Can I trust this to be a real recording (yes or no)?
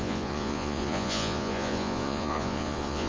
no